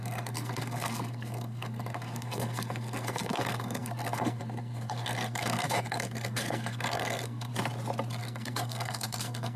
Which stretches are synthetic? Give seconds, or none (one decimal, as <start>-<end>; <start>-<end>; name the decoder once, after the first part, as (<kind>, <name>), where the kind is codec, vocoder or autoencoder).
0.0-7.5 (codec, SNAC); 8.2-9.6